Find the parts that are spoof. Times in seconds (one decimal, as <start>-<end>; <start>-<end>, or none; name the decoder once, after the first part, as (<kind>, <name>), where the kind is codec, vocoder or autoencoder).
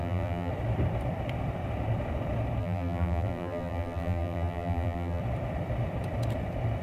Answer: 0.0-0.5 (vocoder, BigVGAN v2); 2.6-5.2